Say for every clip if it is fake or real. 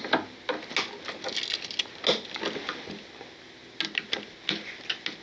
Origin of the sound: real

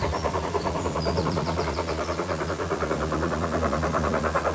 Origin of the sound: fake